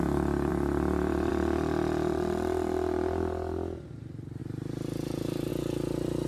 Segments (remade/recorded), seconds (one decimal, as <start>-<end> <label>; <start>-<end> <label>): 0.0-0.5 recorded; 0.5-1.3 remade; 1.3-4.4 recorded; 4.4-5.5 remade; 5.5-6.3 recorded